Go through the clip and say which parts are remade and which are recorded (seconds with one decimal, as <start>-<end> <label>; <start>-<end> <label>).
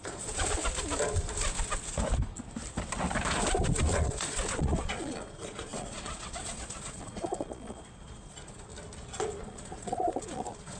0.0-0.6 remade; 0.6-3.8 recorded; 3.8-8.7 remade; 8.7-9.4 recorded; 9.4-10.8 remade